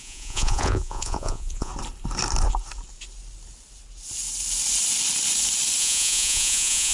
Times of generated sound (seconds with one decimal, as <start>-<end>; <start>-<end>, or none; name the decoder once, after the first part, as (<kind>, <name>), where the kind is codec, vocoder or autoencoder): 0.0-1.7 (vocoder, Vocos); 5.8-6.9